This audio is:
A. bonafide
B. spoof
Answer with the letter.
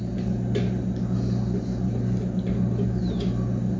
A